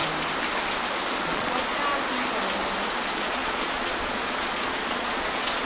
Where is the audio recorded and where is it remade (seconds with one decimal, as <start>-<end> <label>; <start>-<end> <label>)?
0.0-1.2 recorded; 1.2-1.7 remade; 1.7-2.9 recorded; 2.9-5.7 remade